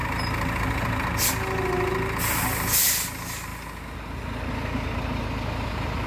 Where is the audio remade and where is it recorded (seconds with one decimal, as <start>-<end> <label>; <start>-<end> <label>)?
0.0-6.1 recorded